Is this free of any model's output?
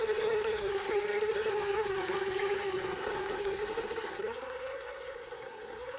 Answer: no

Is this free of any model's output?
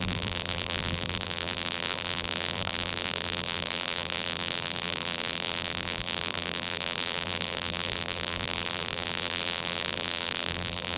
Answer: no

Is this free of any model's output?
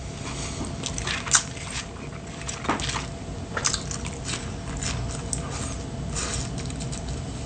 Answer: yes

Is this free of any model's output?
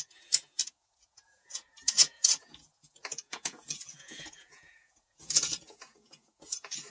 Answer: no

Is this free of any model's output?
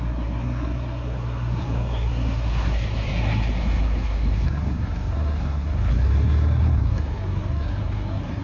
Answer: no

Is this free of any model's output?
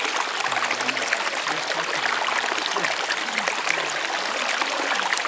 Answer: yes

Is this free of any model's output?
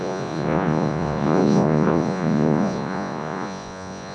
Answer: no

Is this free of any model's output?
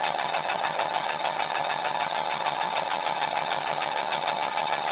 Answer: no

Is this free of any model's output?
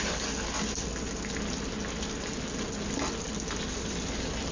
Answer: yes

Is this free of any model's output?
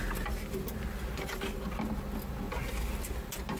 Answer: yes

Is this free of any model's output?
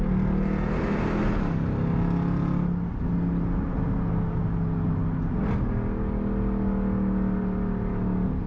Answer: yes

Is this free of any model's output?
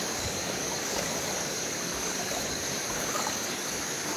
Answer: no